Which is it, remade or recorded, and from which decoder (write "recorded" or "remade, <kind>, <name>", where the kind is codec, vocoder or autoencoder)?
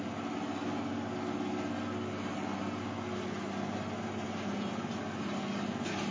recorded